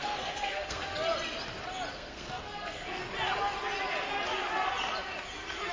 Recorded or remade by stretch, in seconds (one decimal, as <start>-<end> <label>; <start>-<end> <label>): 0.0-0.9 remade; 0.9-1.9 recorded; 1.9-3.0 remade; 3.0-5.7 recorded